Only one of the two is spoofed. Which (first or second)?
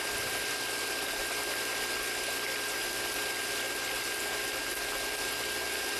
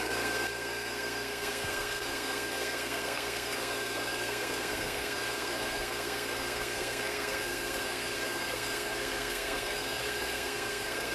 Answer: second